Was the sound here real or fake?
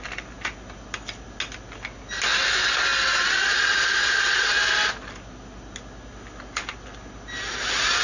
real